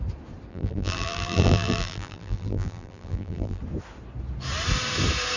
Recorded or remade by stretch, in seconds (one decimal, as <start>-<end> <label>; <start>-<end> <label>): 0.0-0.5 recorded; 0.5-3.6 remade; 3.6-5.4 recorded